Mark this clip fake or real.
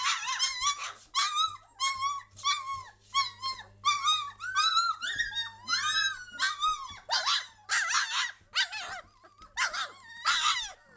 real